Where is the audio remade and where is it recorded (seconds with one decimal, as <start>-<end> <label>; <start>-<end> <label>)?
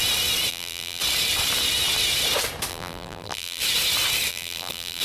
0.0-0.5 recorded; 0.5-1.0 remade; 1.0-2.7 recorded; 2.7-3.6 remade; 3.6-4.3 recorded; 4.3-5.0 remade